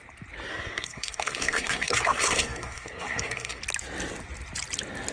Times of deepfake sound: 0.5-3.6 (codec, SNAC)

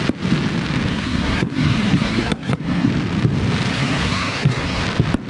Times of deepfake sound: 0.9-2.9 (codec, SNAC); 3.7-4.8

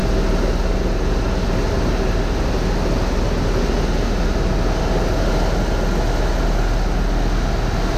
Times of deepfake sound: none

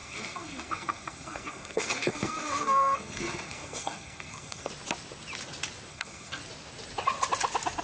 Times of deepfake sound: 0.0-4.7 (codec, SNAC); 5.9-6.4

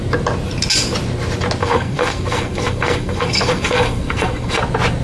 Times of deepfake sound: 1.6-4.6 (codec, SNAC)